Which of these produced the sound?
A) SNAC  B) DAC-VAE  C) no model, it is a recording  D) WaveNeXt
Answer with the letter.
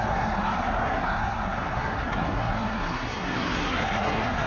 A